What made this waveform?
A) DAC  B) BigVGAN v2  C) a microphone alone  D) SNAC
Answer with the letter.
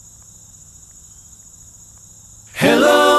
C